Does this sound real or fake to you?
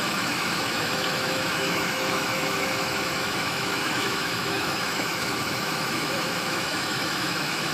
fake